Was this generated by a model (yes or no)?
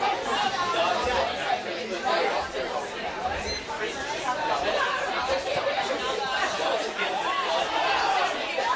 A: yes